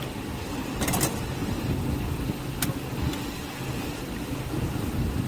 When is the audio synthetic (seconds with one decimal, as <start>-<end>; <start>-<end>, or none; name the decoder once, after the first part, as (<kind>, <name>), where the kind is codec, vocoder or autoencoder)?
none